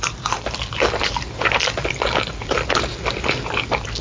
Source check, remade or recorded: remade